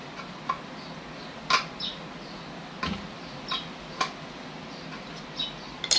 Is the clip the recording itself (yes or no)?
yes